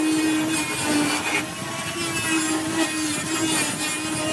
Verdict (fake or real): real